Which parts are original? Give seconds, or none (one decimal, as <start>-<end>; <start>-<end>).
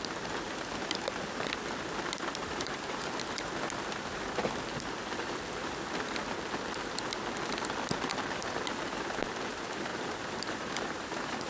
0.0-2.4; 3.5-9.9